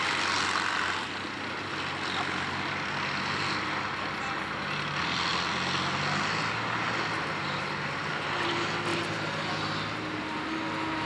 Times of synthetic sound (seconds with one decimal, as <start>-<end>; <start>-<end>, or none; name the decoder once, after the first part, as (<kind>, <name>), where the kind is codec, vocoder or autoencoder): 8.9-9.5 (vocoder, BigVGAN v2)